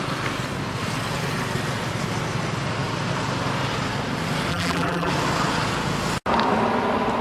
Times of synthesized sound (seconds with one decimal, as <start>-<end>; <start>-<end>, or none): 4.5-5.1